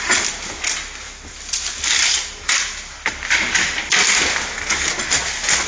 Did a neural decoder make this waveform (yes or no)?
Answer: no